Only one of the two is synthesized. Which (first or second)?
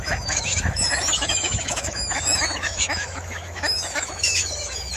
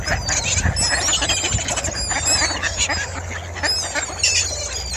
first